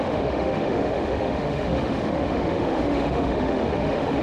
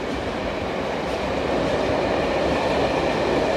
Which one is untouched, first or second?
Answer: second